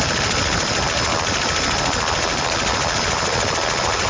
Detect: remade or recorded recorded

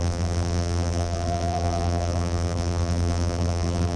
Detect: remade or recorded remade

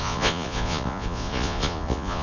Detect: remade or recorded remade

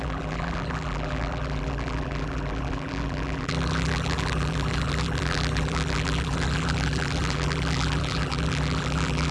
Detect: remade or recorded remade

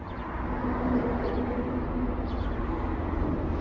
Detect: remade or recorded recorded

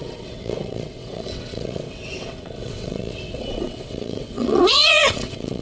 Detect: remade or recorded remade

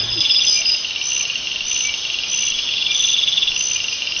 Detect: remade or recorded recorded